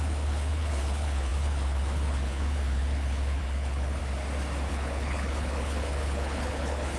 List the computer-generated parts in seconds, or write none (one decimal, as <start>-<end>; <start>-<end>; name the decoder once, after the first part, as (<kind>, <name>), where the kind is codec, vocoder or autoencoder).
0.0-4.0 (codec, HILCodec); 4.7-7.0